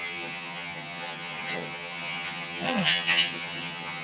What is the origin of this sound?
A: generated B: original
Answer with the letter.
A